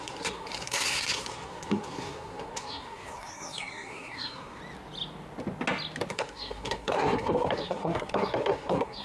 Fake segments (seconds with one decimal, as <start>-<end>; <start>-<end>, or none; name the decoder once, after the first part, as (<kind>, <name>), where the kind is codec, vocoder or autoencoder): 0.0-4.6 (codec, SNAC); 6.1-9.0